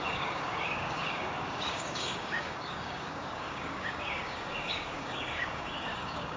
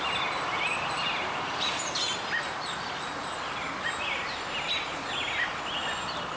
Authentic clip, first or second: second